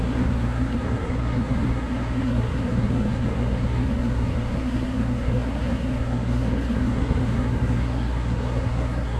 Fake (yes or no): yes